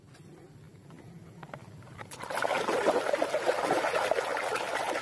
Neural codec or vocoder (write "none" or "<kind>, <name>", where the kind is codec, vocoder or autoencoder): none